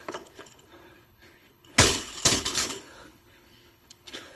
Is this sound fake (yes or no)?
yes